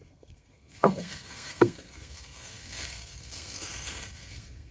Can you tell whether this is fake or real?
fake